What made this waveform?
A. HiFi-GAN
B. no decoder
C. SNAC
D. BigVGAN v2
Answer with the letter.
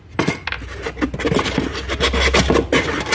B